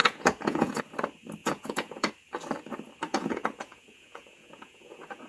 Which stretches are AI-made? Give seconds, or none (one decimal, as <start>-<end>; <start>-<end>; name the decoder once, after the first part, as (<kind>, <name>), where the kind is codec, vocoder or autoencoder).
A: 0.0-0.8 (vocoder, Vocos); 1.4-2.1; 3.1-5.3